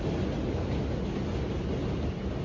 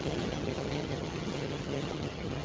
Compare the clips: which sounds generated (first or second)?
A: second